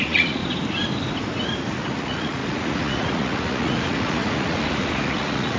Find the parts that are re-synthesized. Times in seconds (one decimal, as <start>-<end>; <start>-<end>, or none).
0.0-0.4; 1.7-5.6